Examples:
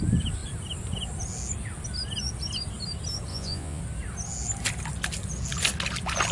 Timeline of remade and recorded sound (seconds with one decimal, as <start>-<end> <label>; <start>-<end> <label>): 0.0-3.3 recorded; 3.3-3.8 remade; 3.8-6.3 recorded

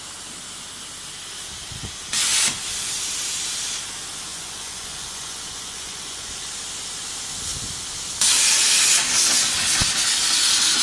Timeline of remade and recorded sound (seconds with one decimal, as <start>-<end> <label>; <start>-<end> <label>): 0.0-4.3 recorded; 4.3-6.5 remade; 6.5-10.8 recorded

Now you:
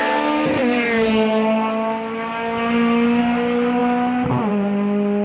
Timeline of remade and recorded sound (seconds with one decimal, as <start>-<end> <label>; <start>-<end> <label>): 0.0-5.2 recorded

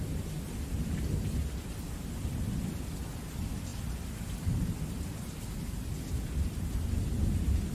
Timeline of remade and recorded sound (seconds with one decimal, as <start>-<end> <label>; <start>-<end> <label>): 0.0-7.7 recorded

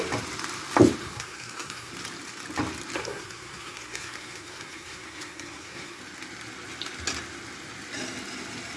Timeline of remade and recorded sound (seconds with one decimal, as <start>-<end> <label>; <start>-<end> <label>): 0.0-1.0 recorded; 1.0-1.9 remade; 1.9-3.0 recorded; 3.0-6.0 remade; 6.0-8.8 recorded

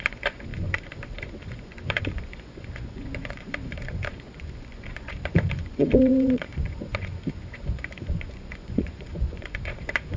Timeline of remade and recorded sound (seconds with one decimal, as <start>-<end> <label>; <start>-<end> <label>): 0.0-10.2 remade

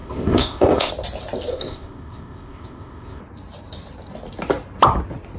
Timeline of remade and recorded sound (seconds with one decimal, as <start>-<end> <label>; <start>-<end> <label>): 0.0-0.9 remade; 0.9-1.5 recorded; 1.5-3.2 remade; 3.2-5.4 recorded